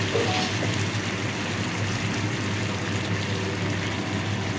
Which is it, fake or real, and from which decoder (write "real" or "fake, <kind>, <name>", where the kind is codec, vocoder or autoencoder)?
real